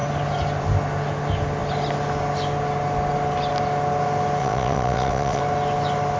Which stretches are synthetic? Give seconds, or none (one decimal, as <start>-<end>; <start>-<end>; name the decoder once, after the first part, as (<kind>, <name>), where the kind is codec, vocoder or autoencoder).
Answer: 4.4-5.4 (vocoder, WaveNeXt)